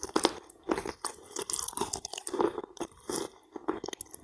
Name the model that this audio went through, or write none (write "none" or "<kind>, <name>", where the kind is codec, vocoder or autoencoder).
none